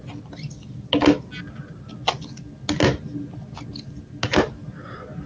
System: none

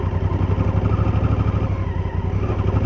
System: none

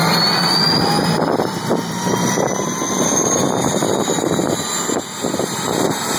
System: none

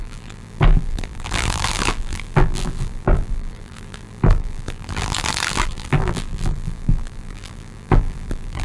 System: vocoder, BigVGAN v2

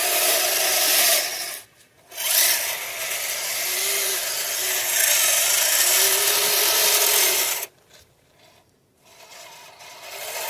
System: none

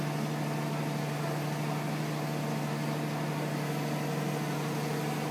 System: none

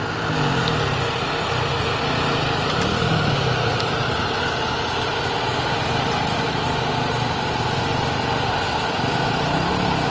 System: none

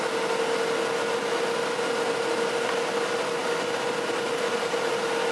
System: none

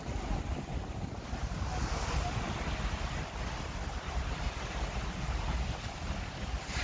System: none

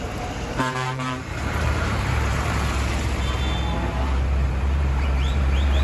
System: vocoder, BigVGAN v2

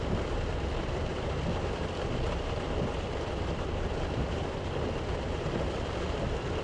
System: vocoder, BigVGAN v2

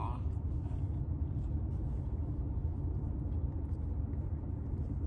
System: none